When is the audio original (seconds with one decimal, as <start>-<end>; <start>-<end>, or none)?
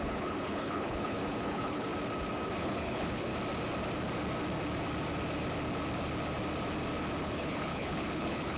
1.9-2.6; 3.3-7.2